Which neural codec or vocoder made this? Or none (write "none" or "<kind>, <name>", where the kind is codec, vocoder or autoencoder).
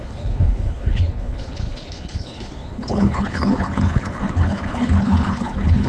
codec, HILCodec